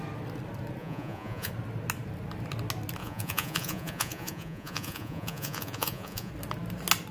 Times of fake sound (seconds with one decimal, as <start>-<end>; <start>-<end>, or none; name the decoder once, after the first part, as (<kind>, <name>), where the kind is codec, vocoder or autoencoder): 0.8-1.5 (vocoder, Vocos); 3.0-6.3